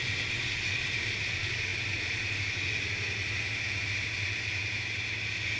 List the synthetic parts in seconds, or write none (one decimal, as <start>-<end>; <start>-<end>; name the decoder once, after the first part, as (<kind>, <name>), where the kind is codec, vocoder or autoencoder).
none